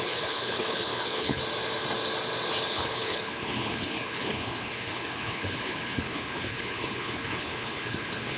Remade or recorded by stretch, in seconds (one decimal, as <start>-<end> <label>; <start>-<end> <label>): 0.0-1.4 remade; 1.4-2.6 recorded; 2.6-8.4 remade